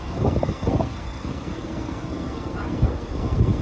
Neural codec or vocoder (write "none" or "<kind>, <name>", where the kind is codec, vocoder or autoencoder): codec, SNAC